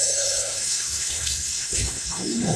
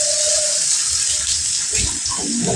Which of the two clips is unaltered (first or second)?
second